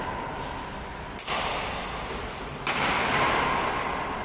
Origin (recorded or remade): recorded